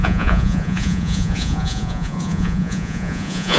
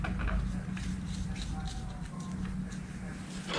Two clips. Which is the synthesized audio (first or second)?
first